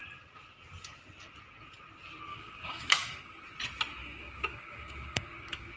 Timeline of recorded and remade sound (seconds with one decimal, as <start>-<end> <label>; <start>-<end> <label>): 0.0-2.3 recorded; 2.3-3.3 remade; 3.3-4.0 recorded; 4.0-5.8 remade